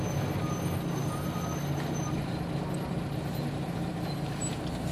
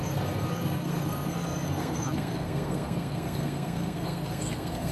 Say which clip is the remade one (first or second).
second